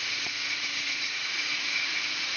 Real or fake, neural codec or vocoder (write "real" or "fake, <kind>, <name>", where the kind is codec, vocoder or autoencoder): fake, vocoder, Vocos